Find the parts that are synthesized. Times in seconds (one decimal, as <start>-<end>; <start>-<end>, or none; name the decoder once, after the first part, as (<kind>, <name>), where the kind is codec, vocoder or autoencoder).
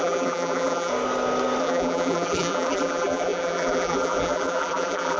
0.0-0.9 (vocoder, BigVGAN v2); 1.6-5.2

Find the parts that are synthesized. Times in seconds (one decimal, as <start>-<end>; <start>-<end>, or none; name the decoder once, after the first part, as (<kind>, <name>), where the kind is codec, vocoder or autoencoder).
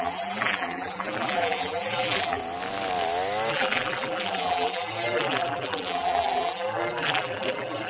0.0-2.4 (vocoder, BigVGAN v2); 3.5-7.9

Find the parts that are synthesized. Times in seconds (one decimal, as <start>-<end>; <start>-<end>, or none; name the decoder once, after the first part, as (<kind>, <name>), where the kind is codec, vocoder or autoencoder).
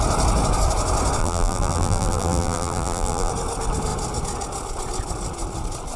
1.2-3.3 (vocoder, BigVGAN v2)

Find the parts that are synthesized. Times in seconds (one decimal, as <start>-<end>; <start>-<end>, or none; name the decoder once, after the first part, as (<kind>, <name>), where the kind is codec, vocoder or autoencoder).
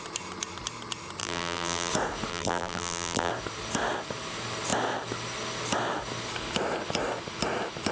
1.2-1.9 (vocoder, BigVGAN v2); 2.3-3.3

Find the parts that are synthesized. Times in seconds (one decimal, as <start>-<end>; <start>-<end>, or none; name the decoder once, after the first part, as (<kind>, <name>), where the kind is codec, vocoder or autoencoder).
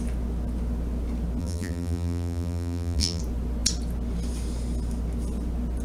1.4-3.2 (vocoder, BigVGAN v2)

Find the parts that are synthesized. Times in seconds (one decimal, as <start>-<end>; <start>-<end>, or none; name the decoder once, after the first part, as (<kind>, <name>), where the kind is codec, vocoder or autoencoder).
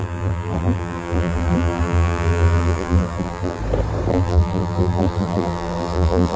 0.0-3.6 (vocoder, BigVGAN v2); 4.1-6.4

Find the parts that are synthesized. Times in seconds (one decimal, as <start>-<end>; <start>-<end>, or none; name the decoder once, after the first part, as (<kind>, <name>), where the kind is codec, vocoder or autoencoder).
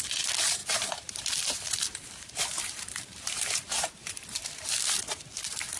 0.6-4.1 (vocoder, BigVGAN v2)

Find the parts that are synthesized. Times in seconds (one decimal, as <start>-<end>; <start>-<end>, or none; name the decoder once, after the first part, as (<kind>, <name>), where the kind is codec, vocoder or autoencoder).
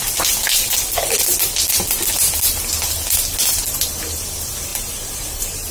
4.7-5.7 (vocoder, BigVGAN v2)